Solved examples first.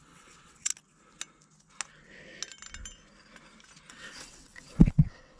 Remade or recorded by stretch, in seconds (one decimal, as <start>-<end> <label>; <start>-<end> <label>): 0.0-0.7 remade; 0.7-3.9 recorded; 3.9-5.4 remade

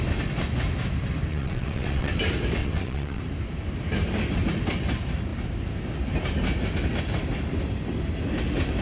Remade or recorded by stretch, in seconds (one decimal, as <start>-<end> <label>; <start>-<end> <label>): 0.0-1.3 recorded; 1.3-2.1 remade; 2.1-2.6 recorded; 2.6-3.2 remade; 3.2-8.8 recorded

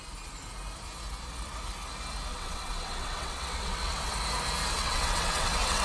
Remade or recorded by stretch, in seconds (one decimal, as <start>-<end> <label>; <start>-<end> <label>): 0.0-2.3 recorded; 2.3-4.1 remade; 4.1-4.7 recorded; 4.7-5.8 remade

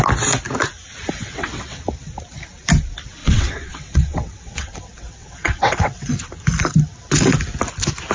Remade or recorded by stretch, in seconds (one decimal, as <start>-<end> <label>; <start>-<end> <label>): 0.0-1.2 recorded; 1.2-1.8 remade; 1.8-3.2 recorded; 3.2-6.1 remade; 6.1-8.1 recorded

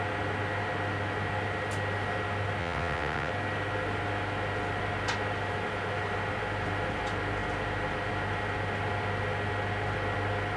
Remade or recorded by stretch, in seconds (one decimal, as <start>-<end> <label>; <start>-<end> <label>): 0.0-2.6 recorded; 2.6-3.3 remade; 3.3-10.6 recorded

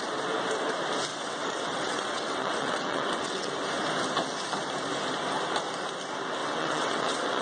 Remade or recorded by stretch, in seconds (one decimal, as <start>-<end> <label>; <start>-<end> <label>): 0.0-1.1 recorded; 1.1-3.5 remade; 3.5-6.4 recorded; 6.4-7.4 remade

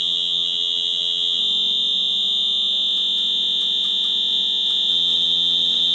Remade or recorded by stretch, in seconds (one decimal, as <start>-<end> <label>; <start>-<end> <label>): 0.0-1.4 remade; 1.4-4.9 recorded; 4.9-5.9 remade